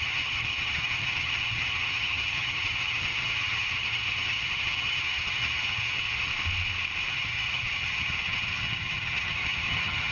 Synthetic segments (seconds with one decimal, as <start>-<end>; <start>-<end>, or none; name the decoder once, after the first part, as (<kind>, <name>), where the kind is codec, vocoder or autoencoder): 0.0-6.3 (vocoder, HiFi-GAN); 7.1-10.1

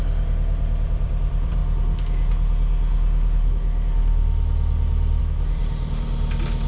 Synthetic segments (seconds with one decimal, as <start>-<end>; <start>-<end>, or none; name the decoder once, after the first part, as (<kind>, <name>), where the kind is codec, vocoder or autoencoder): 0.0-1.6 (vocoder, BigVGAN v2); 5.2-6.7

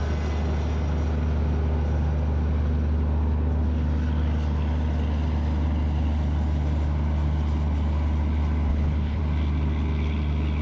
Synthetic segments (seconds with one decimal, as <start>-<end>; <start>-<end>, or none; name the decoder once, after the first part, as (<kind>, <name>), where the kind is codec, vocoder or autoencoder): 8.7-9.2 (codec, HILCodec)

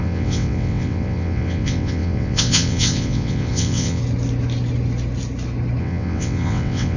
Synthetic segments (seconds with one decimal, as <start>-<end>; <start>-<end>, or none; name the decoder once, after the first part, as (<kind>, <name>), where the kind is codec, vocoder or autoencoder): 0.0-4.0 (vocoder, WaveNeXt); 5.8-7.0

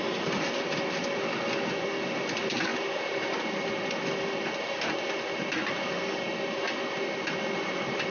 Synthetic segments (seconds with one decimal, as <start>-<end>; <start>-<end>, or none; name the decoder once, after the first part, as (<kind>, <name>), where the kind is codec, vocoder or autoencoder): 0.0-2.7 (vocoder, BigVGAN v2); 6.4-8.1

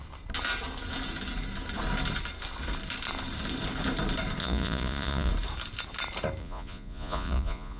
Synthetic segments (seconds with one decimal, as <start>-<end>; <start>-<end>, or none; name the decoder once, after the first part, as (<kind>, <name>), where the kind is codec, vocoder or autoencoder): 4.4-5.3 (vocoder, Vocos); 6.4-7.8